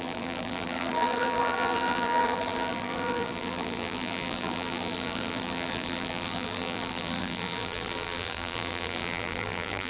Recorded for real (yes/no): no